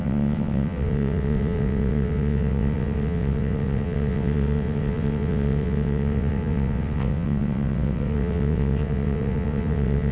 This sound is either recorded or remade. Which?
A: remade